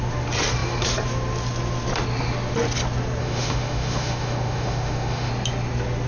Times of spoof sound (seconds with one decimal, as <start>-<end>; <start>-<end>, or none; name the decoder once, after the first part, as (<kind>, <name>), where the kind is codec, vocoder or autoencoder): 3.2-5.3 (autoencoder, DAC-VAE)